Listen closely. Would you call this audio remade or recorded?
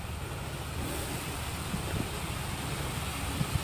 recorded